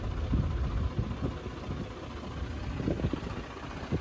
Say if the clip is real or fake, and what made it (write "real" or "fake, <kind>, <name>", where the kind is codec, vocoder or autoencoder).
real